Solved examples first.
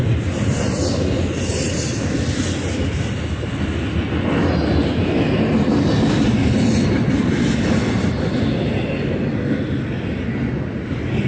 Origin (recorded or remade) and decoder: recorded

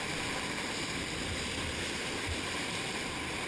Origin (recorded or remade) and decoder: recorded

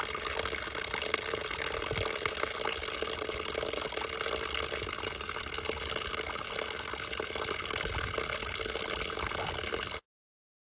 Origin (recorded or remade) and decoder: recorded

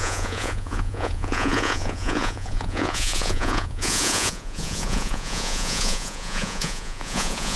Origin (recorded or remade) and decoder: remade, vocoder, Vocos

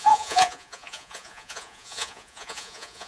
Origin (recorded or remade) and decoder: remade, vocoder, Vocos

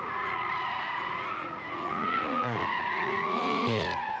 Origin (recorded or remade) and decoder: remade, vocoder, Vocos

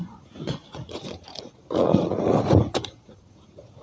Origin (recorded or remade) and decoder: remade, vocoder, Vocos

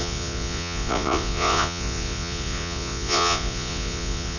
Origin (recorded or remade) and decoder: remade, vocoder, Vocos